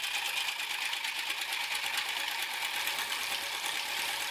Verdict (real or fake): real